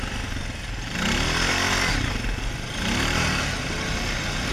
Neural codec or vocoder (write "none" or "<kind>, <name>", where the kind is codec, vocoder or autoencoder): none